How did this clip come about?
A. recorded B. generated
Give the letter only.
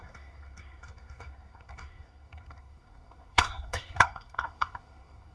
B